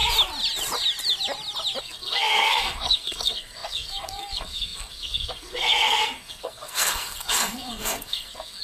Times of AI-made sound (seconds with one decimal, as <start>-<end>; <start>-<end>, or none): 1.8-8.6